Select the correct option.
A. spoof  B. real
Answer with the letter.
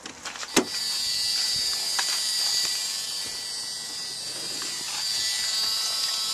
B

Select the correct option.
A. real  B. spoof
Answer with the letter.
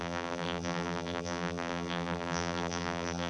B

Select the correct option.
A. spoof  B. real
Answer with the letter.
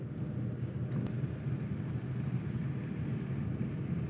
B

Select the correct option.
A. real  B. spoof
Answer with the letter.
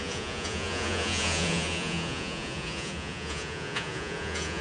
B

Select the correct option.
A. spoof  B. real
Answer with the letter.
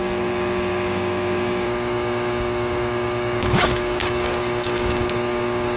A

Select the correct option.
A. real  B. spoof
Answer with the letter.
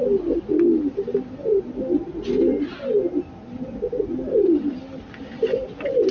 A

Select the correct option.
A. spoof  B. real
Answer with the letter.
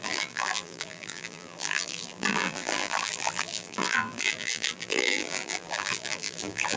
A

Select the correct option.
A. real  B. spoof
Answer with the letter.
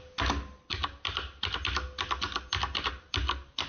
A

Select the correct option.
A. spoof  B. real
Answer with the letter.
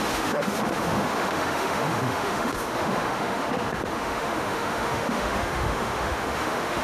A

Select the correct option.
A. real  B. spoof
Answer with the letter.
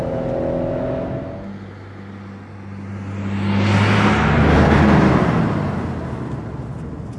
A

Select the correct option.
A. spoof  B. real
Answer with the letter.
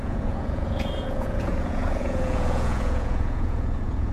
A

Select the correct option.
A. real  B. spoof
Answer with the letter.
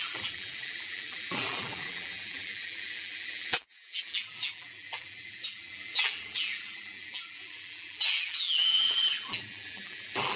B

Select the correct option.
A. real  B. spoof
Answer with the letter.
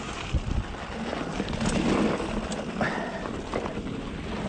A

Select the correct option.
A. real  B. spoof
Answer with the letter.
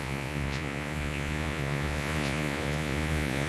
B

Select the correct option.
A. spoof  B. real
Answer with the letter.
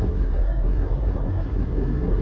A